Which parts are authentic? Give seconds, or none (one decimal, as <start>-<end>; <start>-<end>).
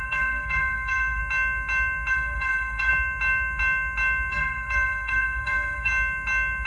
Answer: 1.2-2.1; 2.9-4.3; 5.9-6.7